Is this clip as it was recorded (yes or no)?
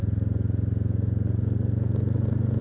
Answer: yes